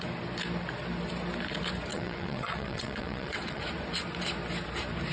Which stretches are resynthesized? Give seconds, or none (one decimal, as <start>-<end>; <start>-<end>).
1.9-3.6